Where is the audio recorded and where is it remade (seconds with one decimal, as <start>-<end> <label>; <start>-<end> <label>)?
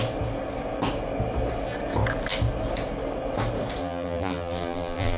0.0-3.8 recorded; 3.8-5.2 remade